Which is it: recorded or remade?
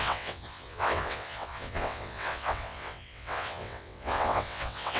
remade